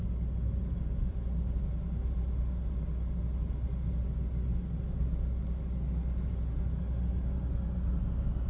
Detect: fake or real real